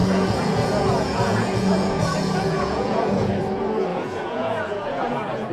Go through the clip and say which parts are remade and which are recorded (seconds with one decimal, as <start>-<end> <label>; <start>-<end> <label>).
0.0-3.3 remade; 3.3-3.9 recorded; 3.9-5.5 remade